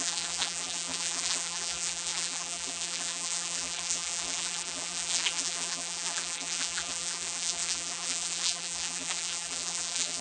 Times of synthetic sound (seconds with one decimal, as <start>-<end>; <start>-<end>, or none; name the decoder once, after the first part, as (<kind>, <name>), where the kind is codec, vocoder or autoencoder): 0.0-10.2 (vocoder, BigVGAN v2)